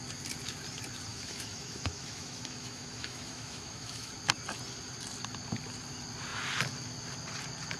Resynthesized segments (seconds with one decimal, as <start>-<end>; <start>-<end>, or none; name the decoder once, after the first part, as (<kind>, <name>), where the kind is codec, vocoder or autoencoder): 1.1-4.1 (autoencoder, DAC-VAE)